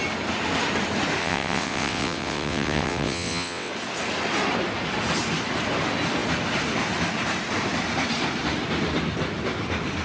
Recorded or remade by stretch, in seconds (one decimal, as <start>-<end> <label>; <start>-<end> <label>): 0.0-1.2 recorded; 1.2-3.7 remade; 3.7-10.0 recorded

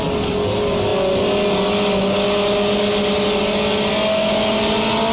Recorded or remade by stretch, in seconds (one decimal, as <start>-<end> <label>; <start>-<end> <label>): 0.0-5.1 recorded

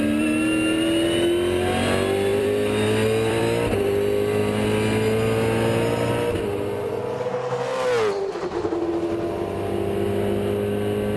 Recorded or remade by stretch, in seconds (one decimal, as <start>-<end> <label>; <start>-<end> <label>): 0.0-2.3 recorded; 2.3-3.4 remade; 3.4-11.2 recorded

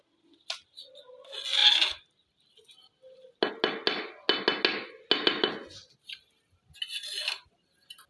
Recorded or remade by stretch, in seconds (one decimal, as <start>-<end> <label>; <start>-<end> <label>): 0.0-8.1 recorded

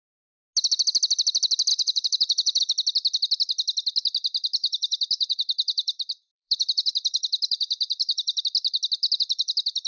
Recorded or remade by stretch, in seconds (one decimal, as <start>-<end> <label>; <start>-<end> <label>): 0.0-1.7 recorded; 1.7-2.6 remade; 2.6-4.6 recorded; 4.6-8.4 remade; 8.4-9.9 recorded

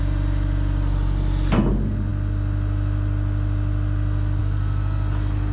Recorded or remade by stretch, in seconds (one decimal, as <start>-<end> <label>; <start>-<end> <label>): 0.0-5.5 recorded